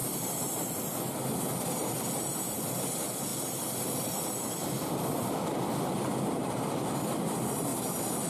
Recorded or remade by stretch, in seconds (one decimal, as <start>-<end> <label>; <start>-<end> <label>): 0.0-3.3 remade; 3.3-4.0 recorded; 4.0-6.4 remade; 6.4-7.3 recorded; 7.3-7.7 remade; 7.7-8.3 recorded